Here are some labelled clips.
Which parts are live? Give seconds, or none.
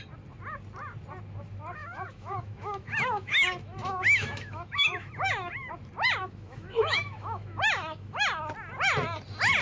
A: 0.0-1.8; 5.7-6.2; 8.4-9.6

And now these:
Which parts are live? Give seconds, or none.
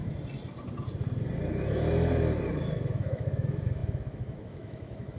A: 0.0-2.5